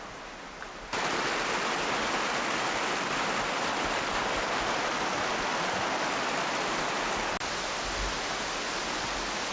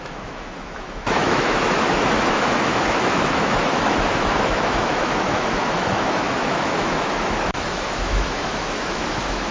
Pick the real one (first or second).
first